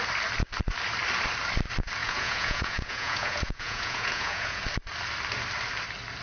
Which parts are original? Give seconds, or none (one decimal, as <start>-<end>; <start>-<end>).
0.0-2.0; 4.6-6.2